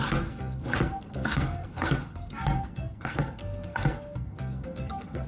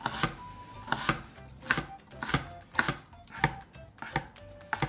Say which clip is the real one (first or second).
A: second